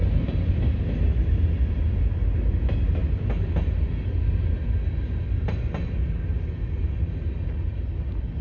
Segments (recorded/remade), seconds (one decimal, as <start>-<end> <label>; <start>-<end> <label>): 0.0-8.4 recorded